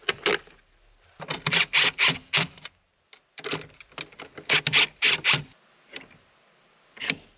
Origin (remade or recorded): recorded